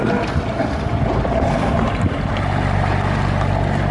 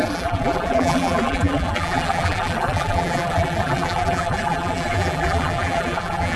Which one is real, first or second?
first